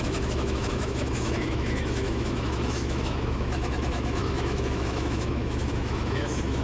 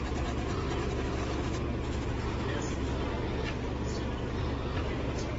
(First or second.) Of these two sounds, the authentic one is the second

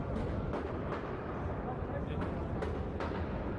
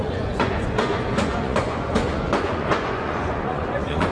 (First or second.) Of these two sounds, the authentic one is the first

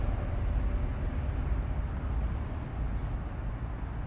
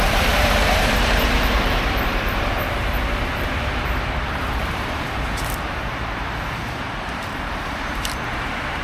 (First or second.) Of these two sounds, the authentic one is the first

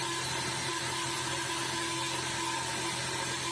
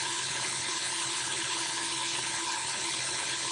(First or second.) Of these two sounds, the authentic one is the first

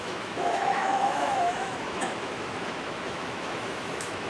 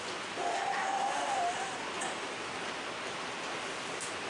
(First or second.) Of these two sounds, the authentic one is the second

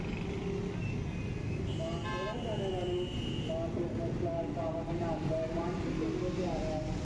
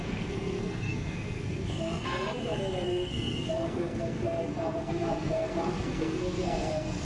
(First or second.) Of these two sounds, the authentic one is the first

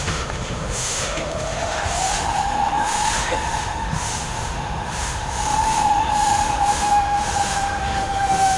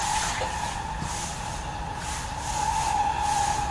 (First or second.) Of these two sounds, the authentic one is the second